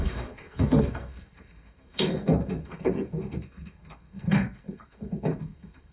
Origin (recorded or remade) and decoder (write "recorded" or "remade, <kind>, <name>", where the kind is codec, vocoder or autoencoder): remade, codec, SNAC